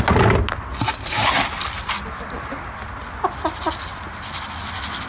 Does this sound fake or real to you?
real